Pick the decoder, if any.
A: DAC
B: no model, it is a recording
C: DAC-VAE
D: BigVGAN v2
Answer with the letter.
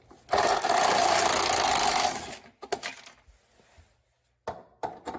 B